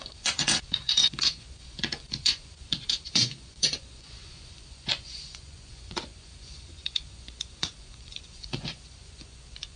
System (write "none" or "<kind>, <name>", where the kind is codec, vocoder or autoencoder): vocoder, Vocos